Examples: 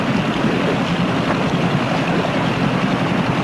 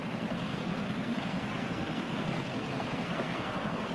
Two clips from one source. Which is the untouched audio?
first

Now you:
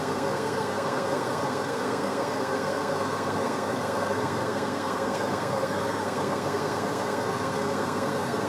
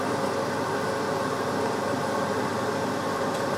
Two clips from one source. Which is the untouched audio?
second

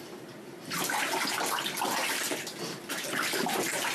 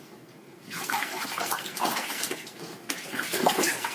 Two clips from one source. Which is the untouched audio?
first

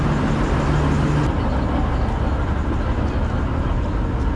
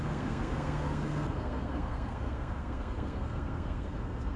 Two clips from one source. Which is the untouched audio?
first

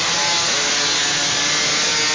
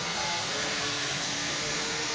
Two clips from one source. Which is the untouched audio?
first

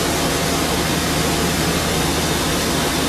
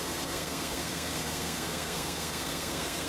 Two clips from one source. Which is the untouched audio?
first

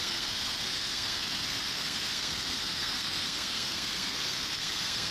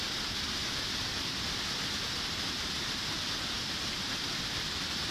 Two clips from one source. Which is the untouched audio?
second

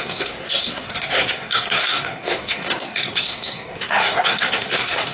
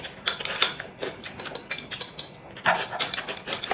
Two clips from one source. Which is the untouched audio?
second